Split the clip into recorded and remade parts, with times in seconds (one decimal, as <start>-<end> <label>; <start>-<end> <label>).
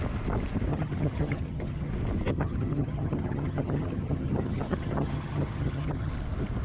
0.0-0.7 recorded; 0.7-1.9 remade; 1.9-2.3 recorded; 2.3-6.1 remade; 6.1-6.6 recorded